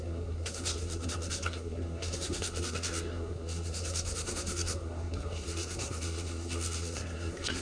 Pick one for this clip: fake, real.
fake